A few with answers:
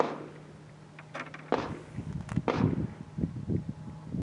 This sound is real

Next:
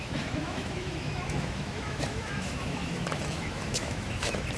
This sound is fake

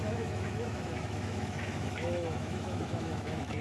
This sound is fake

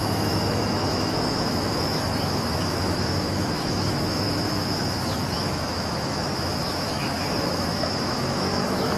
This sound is fake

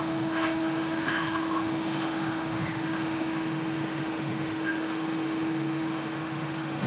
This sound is fake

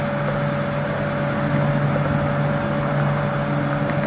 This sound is real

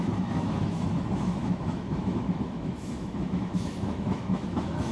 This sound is fake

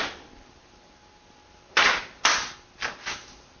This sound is real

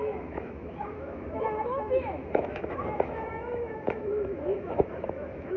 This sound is fake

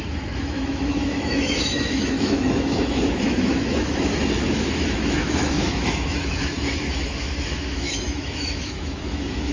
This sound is fake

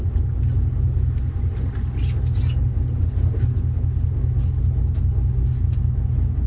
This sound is real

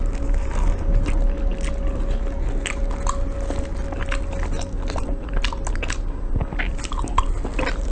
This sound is real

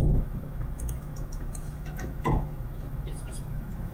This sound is fake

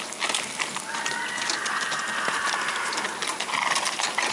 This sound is real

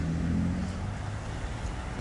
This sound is real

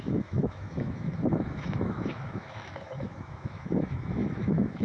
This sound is fake